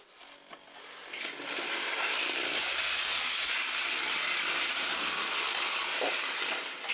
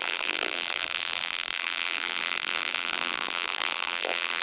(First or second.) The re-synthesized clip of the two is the second